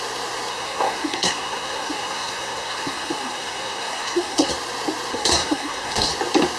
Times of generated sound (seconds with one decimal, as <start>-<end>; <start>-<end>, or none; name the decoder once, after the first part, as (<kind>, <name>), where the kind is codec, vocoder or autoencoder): 0.5-4.5 (codec, SNAC); 5.1-6.1